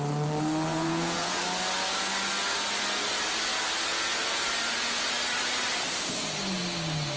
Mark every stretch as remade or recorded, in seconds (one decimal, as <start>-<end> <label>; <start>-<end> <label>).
0.0-0.7 recorded; 0.7-1.4 remade; 1.4-3.9 recorded; 3.9-4.5 remade; 4.5-7.2 recorded